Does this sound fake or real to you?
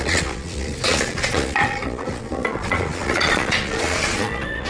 fake